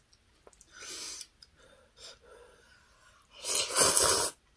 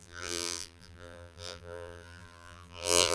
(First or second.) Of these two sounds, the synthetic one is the second